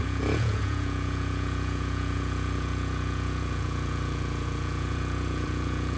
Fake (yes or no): yes